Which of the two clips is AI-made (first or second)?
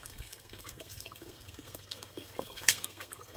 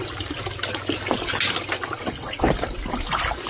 first